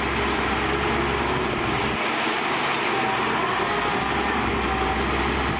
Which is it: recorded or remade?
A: recorded